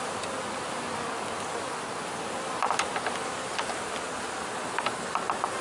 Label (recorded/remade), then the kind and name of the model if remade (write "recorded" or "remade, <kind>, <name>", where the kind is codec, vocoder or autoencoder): recorded